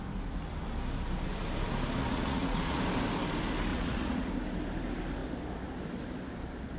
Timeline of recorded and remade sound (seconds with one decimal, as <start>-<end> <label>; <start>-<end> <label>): 0.0-2.0 recorded; 2.0-2.8 remade; 2.8-3.7 recorded; 3.7-4.3 remade; 4.3-6.8 recorded